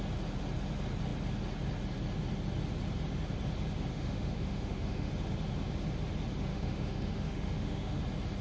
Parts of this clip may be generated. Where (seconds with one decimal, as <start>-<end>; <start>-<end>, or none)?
3.9-5.1; 6.5-8.0